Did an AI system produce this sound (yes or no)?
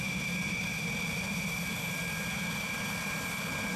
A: no